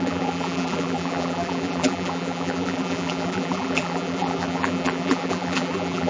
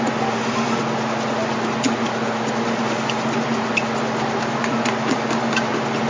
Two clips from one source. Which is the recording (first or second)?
second